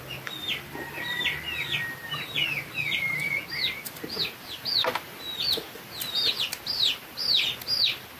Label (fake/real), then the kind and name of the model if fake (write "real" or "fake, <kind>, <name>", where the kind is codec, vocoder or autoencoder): real